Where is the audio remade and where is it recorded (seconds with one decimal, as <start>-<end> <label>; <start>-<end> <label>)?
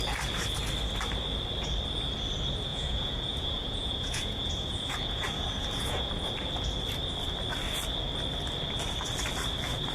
0.0-2.7 recorded; 2.7-6.3 remade; 6.3-9.9 recorded